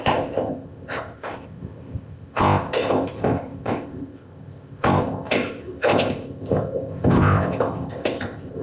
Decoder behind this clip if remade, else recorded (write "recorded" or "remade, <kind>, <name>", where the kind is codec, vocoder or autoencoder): remade, codec, ZipCodec